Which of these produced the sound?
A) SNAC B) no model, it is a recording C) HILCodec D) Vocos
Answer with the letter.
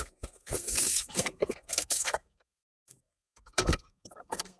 A